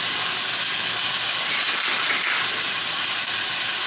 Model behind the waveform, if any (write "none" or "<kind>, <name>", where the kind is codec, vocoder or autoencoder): none